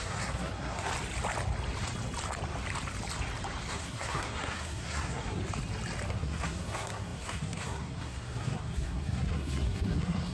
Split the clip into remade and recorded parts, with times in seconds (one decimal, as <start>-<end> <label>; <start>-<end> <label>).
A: 0.0-0.9 remade; 0.9-3.7 recorded; 3.7-5.4 remade; 5.4-6.1 recorded; 6.1-10.3 remade